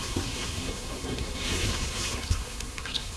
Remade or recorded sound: remade